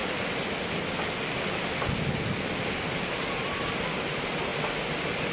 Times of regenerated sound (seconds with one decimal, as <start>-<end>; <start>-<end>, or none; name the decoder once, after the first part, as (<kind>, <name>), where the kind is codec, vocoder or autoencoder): 3.2-4.5 (vocoder, BigVGAN v2)